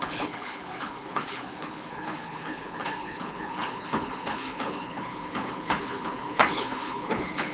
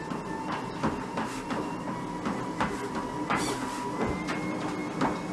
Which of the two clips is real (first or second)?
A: second